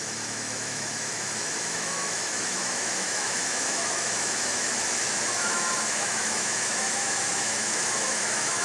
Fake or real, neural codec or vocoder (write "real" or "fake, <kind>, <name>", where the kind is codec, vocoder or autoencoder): fake, autoencoder, DAC-VAE